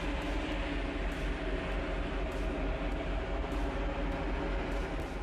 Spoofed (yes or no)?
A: no